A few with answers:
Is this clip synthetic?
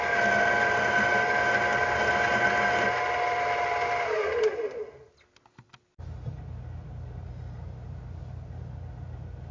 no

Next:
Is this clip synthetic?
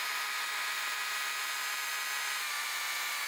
no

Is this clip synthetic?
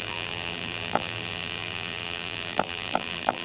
yes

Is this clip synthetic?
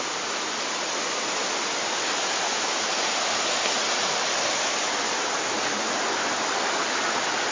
no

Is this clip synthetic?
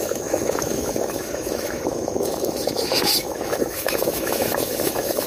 yes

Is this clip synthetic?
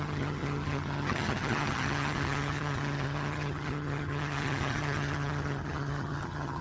yes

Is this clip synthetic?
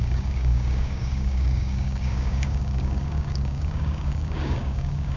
yes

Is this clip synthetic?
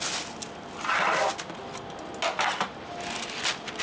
no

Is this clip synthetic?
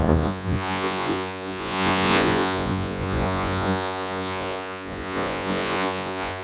yes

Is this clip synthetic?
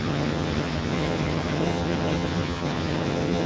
yes